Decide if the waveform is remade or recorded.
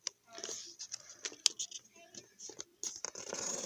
recorded